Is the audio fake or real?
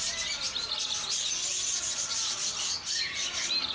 real